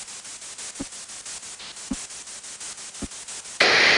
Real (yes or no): yes